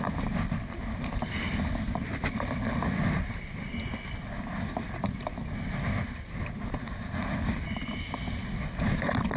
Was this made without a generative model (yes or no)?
yes